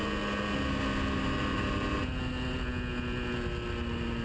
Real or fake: real